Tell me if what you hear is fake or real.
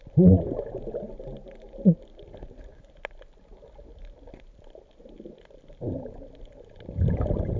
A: real